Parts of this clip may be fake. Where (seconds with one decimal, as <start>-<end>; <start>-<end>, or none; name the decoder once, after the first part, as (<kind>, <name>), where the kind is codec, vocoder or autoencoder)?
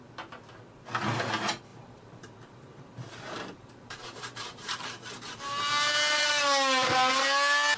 1.7-6.4 (vocoder, BigVGAN v2)